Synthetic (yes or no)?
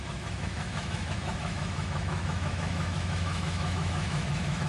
yes